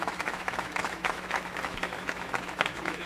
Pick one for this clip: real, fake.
fake